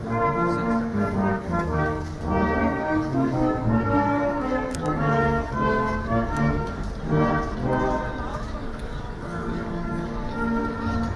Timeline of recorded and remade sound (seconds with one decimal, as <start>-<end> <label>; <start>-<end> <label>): 0.0-1.3 recorded; 1.3-2.2 remade; 2.2-2.6 recorded; 2.6-6.9 remade; 6.9-8.3 recorded; 8.3-10.6 remade; 10.6-11.2 recorded